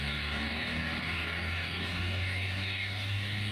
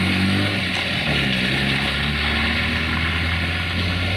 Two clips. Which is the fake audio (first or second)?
first